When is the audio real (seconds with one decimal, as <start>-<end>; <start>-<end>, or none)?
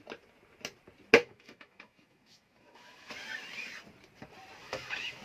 0.0-1.2; 3.1-4.6